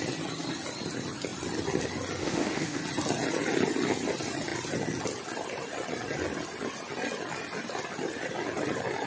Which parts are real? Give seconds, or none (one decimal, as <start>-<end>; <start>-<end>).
0.0-2.2; 2.8-9.1